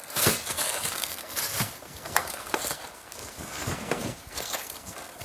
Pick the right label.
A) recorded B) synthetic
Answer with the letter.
B